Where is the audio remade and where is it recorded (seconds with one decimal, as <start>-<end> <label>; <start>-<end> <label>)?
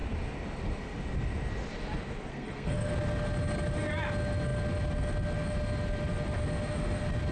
0.0-2.3 recorded; 2.3-2.9 remade; 2.9-7.3 recorded